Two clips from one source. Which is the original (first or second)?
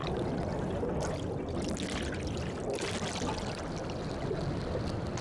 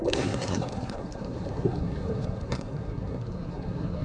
first